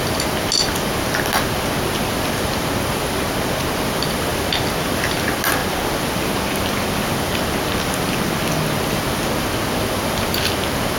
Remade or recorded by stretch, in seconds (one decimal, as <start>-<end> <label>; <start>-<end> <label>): 0.0-11.0 recorded